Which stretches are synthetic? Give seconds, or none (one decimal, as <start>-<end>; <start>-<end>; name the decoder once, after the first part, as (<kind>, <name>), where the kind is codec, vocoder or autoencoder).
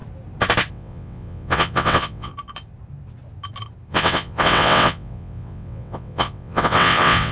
0.7-2.3 (vocoder, WaveNeXt); 3.9-7.3